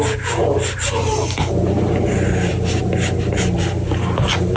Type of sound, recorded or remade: recorded